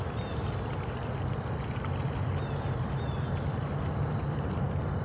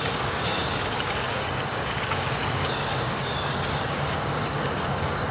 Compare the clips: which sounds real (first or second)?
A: first